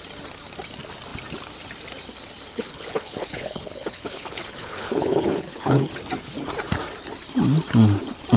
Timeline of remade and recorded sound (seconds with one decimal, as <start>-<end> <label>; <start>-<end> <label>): 0.0-2.5 recorded; 2.5-5.9 remade; 5.9-8.4 recorded